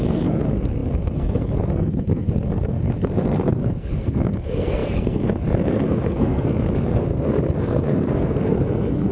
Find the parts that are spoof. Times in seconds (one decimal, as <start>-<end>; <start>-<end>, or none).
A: 0.0-9.1